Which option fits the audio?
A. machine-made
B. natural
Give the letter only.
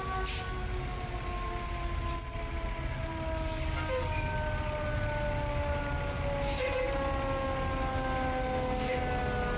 B